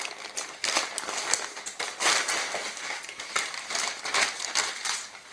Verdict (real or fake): real